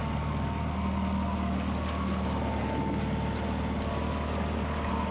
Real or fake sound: real